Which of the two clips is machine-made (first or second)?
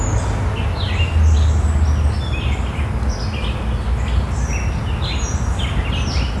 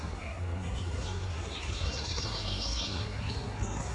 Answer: second